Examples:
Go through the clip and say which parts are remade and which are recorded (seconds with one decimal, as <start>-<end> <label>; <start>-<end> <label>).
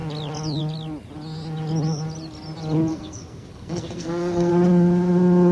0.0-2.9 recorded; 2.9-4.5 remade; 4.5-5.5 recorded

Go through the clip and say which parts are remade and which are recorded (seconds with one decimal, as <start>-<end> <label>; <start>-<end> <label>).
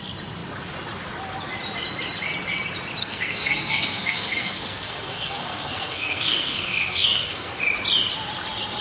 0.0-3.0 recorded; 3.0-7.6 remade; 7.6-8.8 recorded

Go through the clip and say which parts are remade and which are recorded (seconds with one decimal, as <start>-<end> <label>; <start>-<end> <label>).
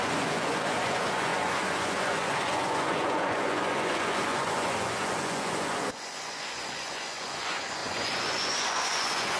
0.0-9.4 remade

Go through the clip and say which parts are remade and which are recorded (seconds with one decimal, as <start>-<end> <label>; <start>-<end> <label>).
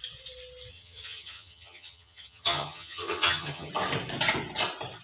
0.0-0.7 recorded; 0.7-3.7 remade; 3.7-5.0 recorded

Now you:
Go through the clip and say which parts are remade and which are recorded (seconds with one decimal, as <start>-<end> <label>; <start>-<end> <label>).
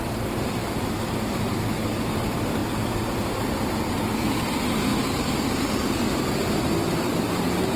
0.0-7.8 recorded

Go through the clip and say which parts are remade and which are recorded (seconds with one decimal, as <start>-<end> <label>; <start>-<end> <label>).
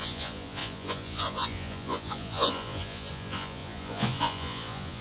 0.0-5.0 remade